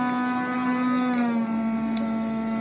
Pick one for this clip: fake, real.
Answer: real